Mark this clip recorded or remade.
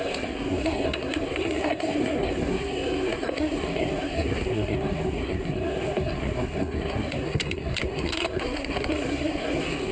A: remade